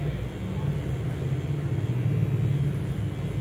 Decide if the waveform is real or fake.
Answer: real